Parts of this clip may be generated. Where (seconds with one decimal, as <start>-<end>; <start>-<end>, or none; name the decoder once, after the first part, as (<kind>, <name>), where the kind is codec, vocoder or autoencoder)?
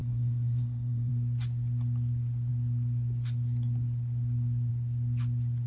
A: 0.0-1.1 (codec, SNAC)